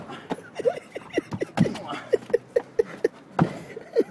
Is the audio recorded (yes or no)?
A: yes